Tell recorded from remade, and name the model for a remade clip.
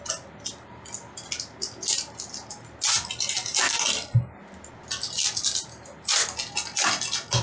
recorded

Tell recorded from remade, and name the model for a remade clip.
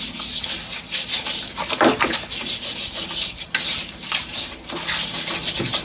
recorded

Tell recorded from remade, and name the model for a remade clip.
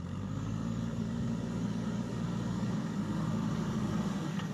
remade, codec, DAC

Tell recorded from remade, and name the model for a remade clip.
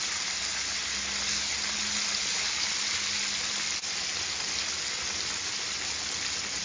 recorded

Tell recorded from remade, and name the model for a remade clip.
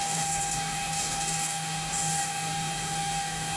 remade, codec, DAC